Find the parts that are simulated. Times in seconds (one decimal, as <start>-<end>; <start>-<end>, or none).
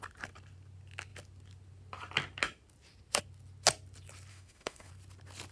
4.3-4.9